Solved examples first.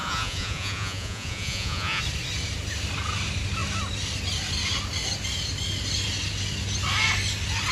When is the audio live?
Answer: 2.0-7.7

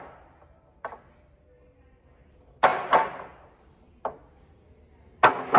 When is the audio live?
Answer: 0.0-5.6

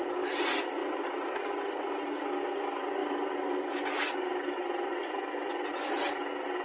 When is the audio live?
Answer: 0.0-6.6

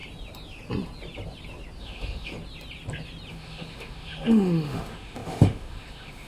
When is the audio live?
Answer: 0.0-1.8; 2.3-3.3

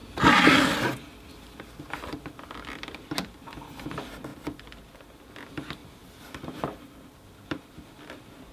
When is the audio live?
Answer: 0.0-8.5